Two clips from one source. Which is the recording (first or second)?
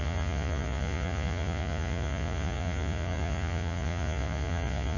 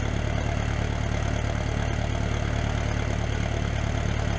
second